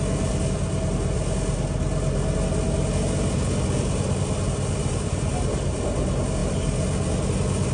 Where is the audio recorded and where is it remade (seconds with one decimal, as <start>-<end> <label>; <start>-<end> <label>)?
0.0-4.8 recorded; 4.8-5.8 remade; 5.8-7.7 recorded